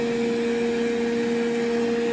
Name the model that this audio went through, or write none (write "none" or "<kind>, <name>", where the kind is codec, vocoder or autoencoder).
none